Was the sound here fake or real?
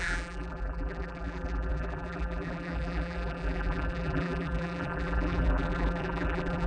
fake